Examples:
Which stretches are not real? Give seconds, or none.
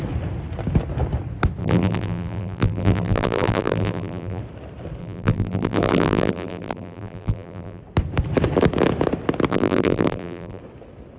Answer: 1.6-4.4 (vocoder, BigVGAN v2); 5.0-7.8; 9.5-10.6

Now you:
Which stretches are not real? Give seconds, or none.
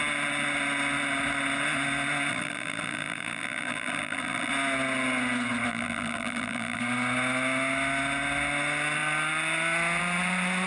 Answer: 2.3-4.5 (vocoder, BigVGAN v2); 5.7-6.8